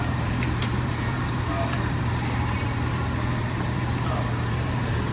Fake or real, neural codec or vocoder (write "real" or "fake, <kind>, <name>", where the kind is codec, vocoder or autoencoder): fake, vocoder, BigVGAN v2